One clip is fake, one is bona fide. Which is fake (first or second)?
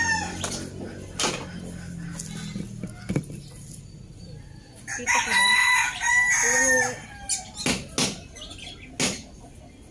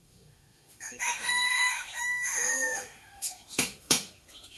second